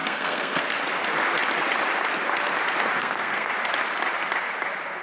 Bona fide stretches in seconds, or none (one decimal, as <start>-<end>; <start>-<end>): 0.6-3.0; 3.5-5.0